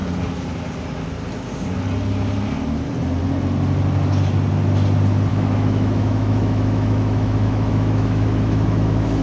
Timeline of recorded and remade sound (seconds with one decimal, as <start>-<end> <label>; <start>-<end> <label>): 0.0-5.3 recorded; 5.3-9.2 remade